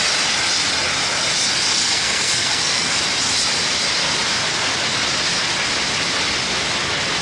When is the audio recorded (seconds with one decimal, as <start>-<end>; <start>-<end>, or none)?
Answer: 0.0-1.7; 3.0-7.2